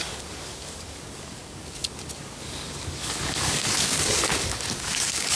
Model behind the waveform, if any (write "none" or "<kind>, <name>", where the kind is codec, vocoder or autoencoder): codec, DAC